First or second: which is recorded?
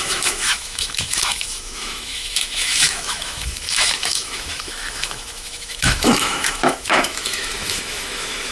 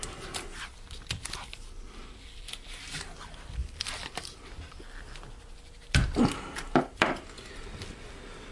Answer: second